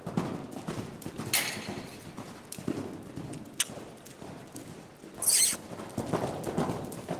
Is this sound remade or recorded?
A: recorded